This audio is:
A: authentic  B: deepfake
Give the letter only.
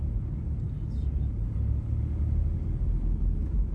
A